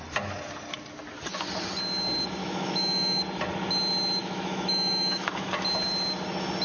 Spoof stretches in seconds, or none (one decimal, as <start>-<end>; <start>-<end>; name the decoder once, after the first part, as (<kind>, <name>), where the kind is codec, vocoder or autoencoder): 2.4-3.2 (autoencoder, DAC-VAE); 4.2-5.5